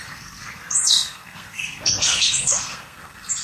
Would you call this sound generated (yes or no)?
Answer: yes